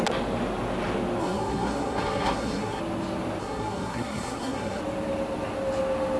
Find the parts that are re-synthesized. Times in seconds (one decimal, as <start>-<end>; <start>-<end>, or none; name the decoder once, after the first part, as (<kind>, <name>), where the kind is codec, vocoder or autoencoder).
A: 1.2-2.8 (codec, SNAC); 3.4-4.8